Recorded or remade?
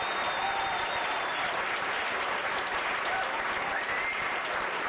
recorded